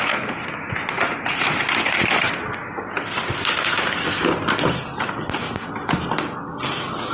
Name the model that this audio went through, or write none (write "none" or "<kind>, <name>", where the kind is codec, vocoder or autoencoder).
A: none